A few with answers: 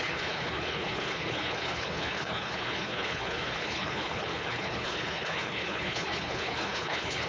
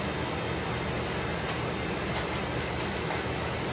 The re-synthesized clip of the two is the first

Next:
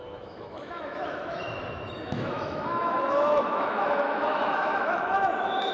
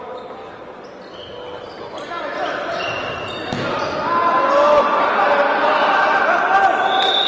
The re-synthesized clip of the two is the first